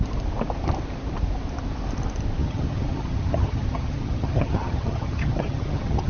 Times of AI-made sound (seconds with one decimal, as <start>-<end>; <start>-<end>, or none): 2.4-6.1

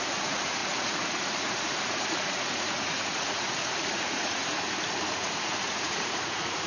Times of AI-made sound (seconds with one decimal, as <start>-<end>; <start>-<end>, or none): 0.0-4.4; 5.1-6.7

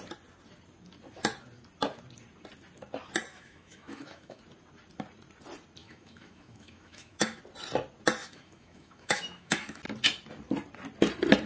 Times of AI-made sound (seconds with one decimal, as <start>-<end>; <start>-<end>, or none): 3.3-4.4; 5.8-7.4; 8.2-9.8

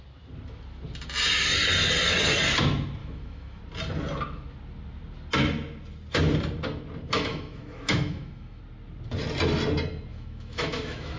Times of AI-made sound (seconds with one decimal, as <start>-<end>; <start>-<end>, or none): 3.0-3.6; 7.3-8.6; 10.1-11.2

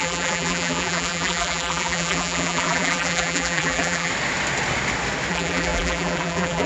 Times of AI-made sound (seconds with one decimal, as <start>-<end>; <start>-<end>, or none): 0.0-4.1; 5.3-6.7

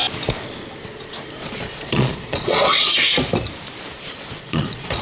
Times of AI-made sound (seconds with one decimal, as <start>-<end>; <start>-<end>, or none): 1.4-2.9; 4.0-5.0

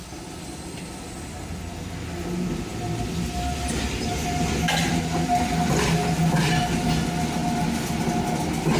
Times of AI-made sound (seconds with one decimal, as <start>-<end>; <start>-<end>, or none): none